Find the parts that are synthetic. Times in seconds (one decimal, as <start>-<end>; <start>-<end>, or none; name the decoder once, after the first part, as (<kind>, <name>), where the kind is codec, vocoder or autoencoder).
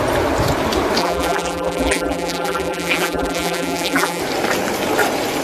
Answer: 1.0-4.2 (vocoder, BigVGAN v2)